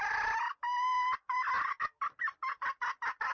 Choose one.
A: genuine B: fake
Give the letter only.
A